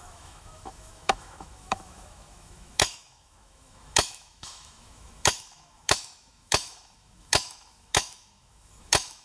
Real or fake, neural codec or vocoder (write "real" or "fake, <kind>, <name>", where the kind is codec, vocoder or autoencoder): fake, autoencoder, DAC-VAE